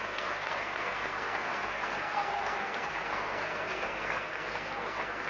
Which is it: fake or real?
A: fake